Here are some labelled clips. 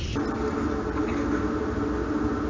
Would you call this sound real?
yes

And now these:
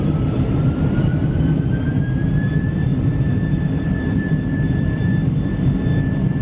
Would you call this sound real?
no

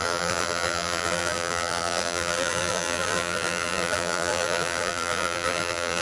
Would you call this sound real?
no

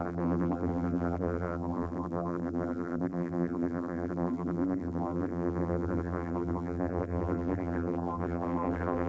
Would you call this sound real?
no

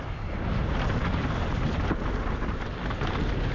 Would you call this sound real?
yes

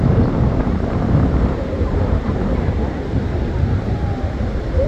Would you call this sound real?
no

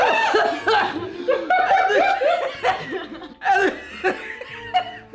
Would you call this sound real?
yes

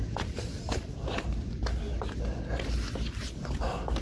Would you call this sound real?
yes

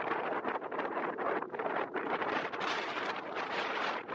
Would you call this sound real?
no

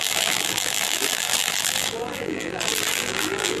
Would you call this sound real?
no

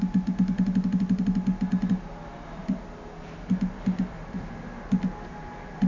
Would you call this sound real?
yes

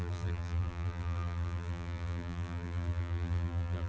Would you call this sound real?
no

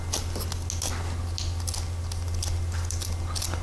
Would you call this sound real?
yes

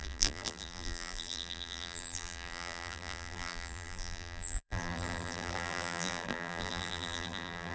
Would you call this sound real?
no